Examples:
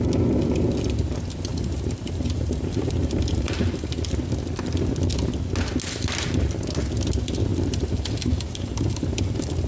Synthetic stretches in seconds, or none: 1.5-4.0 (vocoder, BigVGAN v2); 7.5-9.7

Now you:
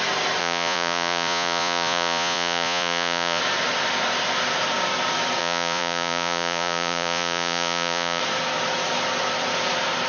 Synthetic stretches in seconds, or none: 0.4-3.4 (vocoder, Vocos); 5.4-8.2

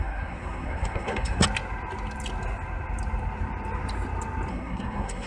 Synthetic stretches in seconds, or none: 0.0-1.4 (codec, SNAC); 4.5-5.3

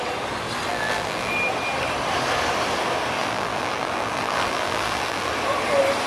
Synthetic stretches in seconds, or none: 0.7-1.3 (vocoder, BigVGAN v2); 3.2-5.3